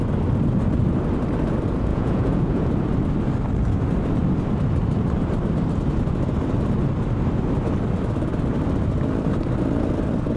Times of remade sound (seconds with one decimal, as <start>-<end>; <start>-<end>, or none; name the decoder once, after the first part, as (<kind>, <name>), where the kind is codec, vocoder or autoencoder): 1.9-2.7 (vocoder, Vocos)